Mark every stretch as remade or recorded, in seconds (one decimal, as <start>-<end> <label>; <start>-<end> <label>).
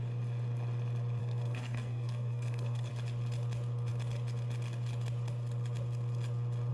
0.0-1.2 recorded; 1.2-2.9 remade; 2.9-6.7 recorded